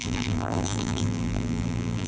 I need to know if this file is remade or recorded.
remade